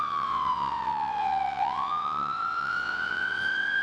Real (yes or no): no